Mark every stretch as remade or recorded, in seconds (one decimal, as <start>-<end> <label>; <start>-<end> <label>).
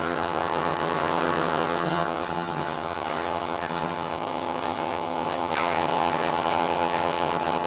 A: 0.0-7.7 remade